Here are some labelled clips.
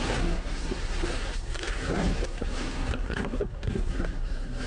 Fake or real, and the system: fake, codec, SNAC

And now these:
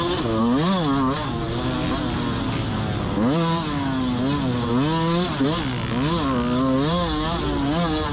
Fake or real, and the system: real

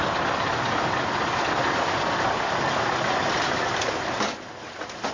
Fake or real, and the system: real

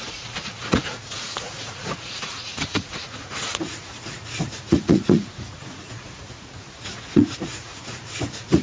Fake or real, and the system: fake, vocoder, Vocos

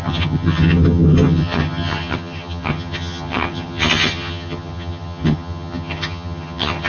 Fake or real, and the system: fake, vocoder, HiFi-GAN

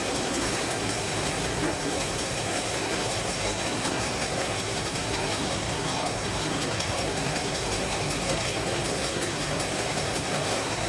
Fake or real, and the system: fake, codec, SNAC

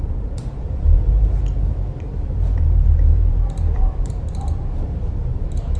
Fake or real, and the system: fake, vocoder, BigVGAN v2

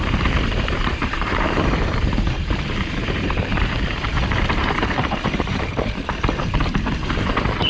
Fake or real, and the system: fake, vocoder, BigVGAN v2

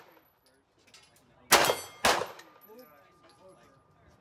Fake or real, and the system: real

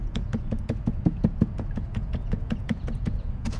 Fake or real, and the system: fake, vocoder, Vocos